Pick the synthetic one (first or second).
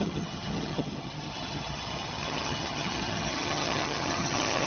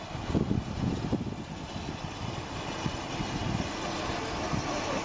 first